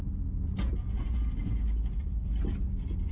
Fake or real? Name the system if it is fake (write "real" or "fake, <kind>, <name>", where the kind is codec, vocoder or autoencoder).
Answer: real